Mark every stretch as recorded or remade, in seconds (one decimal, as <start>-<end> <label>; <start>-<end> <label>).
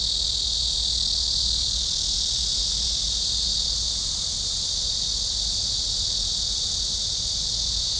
0.0-8.0 recorded